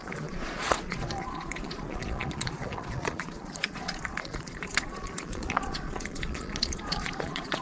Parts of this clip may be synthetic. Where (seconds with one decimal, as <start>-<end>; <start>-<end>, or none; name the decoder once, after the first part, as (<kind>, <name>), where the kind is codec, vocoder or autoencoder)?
0.0-7.6 (vocoder, Vocos)